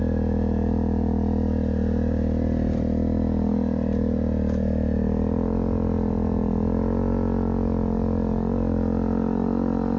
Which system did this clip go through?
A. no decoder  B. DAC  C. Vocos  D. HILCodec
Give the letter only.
A